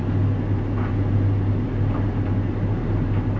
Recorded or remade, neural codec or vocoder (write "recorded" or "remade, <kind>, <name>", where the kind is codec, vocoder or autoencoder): recorded